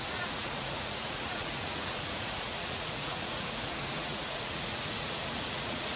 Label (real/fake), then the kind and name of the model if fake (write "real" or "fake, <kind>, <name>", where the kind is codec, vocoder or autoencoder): fake, vocoder, Vocos